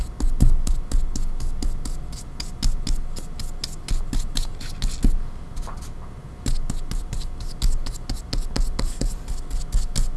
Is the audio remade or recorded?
recorded